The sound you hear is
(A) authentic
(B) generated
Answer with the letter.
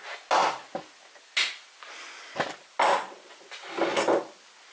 A